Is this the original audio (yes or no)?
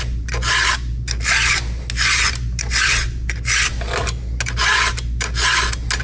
yes